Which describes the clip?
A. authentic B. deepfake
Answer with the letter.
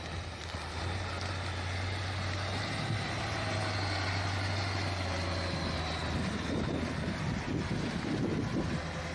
A